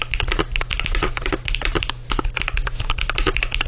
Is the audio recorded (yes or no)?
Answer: yes